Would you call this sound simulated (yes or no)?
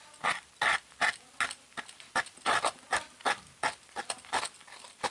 no